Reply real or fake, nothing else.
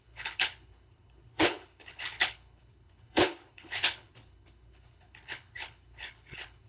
fake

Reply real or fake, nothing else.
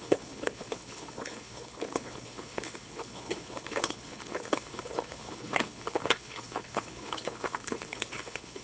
fake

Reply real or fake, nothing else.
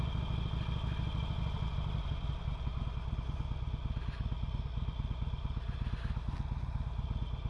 real